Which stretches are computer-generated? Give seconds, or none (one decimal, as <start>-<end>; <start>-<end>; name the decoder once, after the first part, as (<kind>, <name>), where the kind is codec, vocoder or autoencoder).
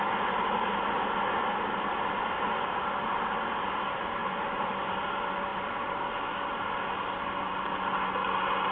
4.2-4.9 (vocoder, BigVGAN v2); 5.5-6.2